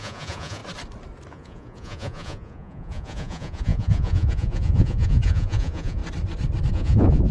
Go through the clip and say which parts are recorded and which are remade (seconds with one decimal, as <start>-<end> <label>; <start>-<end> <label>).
0.0-0.6 remade; 0.6-1.3 recorded; 1.3-6.0 remade; 6.0-6.7 recorded; 6.7-7.3 remade